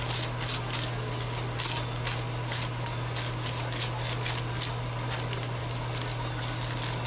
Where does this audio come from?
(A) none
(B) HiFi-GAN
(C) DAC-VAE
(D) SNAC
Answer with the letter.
A